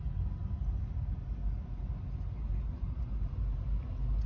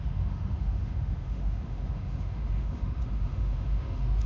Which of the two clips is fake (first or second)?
second